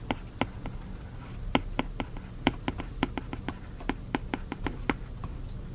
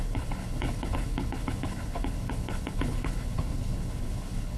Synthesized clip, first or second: second